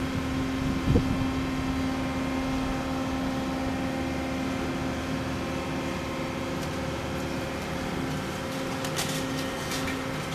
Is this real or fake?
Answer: real